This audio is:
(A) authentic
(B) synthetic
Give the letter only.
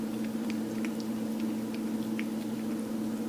A